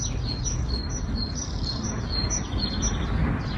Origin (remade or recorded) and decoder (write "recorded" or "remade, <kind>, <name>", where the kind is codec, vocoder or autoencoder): recorded